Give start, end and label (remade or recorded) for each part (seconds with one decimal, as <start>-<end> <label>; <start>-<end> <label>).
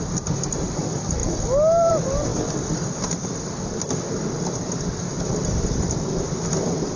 0.0-7.0 recorded